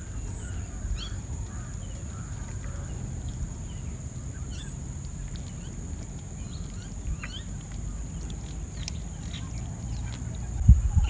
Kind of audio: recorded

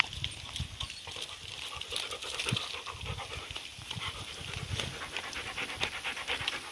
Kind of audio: recorded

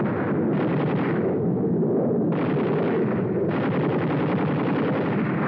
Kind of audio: recorded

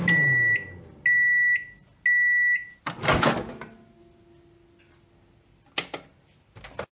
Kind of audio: recorded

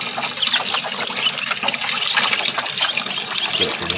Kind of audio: recorded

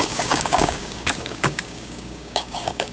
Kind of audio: remade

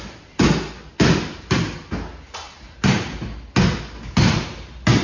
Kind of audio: recorded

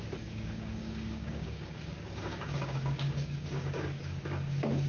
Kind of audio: remade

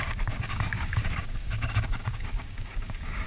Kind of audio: remade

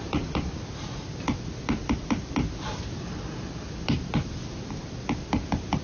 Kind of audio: recorded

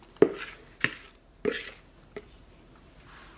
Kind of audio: recorded